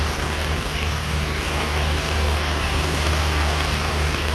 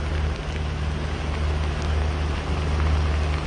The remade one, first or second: first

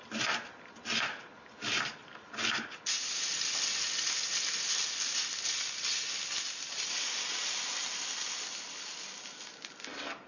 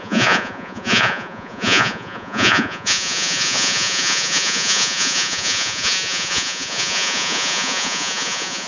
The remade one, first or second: second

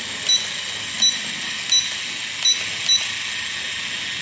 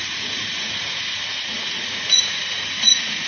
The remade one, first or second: second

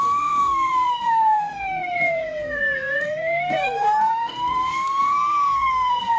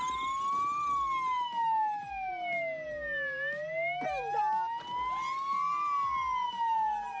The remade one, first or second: first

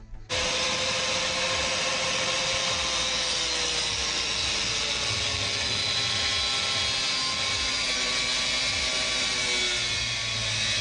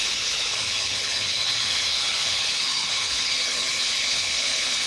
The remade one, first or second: second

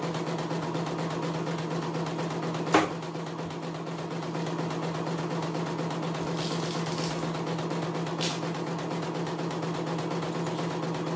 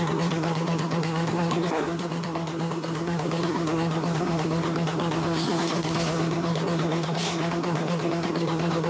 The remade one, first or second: second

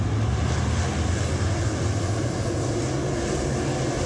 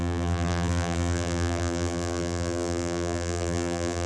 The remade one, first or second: second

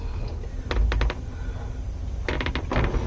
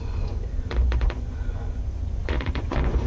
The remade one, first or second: second